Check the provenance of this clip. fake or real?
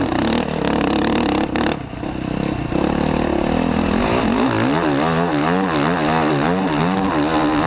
real